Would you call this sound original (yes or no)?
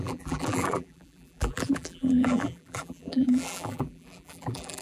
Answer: no